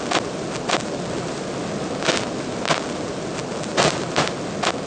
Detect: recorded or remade recorded